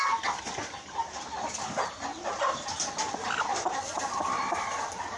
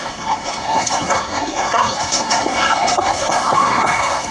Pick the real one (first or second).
first